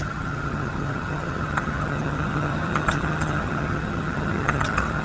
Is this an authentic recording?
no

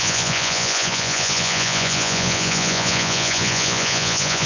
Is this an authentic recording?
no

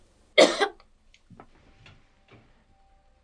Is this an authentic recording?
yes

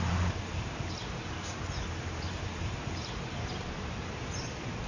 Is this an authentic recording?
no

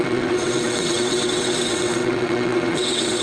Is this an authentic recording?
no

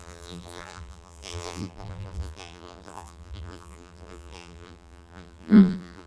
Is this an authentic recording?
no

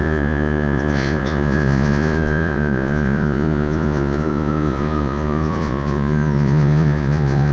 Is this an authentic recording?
no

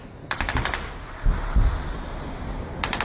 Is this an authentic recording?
yes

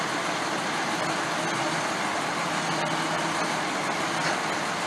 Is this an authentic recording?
yes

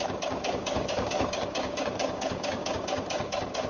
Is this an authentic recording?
no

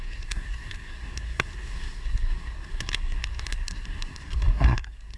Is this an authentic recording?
no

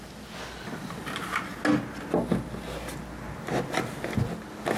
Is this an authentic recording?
yes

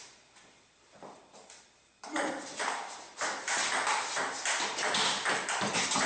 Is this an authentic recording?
yes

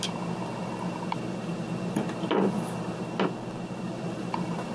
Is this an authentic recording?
yes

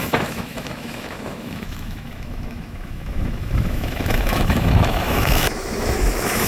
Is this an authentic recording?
no